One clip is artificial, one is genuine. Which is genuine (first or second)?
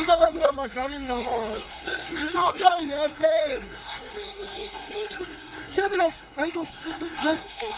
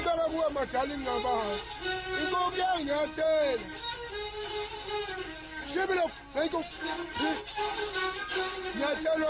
second